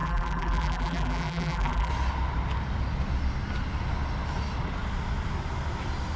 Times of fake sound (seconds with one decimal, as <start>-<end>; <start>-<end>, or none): 0.0-1.9